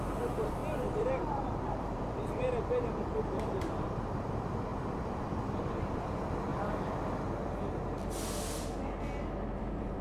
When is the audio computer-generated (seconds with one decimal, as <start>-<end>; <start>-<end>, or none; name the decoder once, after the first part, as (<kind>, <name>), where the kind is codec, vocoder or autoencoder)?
0.0-6.5 (vocoder, BigVGAN v2); 9.6-10.0